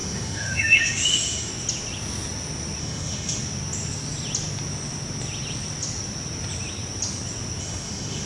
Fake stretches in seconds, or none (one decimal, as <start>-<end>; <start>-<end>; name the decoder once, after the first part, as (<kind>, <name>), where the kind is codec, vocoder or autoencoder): 0.0-1.5 (autoencoder, DAC-VAE); 2.8-3.4; 7.6-8.3